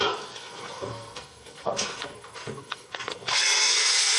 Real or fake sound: fake